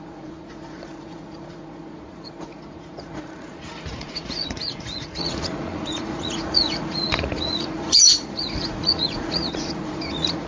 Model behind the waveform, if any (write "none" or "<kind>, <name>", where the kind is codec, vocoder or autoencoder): vocoder, Vocos